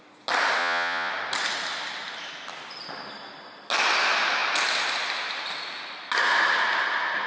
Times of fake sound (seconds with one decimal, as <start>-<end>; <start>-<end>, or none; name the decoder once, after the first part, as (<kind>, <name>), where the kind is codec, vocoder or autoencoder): 0.6-1.1 (vocoder, Vocos)

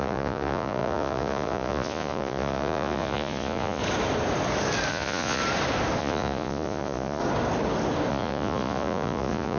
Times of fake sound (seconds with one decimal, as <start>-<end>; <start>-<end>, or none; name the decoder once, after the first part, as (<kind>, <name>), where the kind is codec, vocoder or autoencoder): 0.0-3.8 (vocoder, Vocos); 4.9-5.4; 6.0-7.2; 8.1-9.6

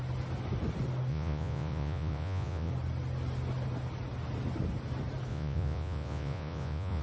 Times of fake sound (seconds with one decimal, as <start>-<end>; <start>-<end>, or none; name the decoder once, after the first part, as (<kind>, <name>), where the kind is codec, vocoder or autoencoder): 1.1-2.7 (vocoder, Vocos); 5.3-7.0

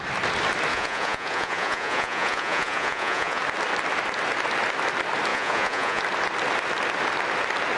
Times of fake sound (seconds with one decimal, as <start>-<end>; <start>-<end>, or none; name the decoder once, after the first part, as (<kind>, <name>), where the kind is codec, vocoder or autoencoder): 0.7-3.4 (vocoder, Vocos); 5.3-6.0

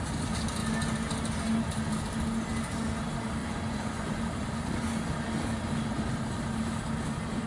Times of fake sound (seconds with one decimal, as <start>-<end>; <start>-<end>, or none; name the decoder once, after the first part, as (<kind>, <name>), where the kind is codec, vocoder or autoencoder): 3.4-4.2 (vocoder, Vocos)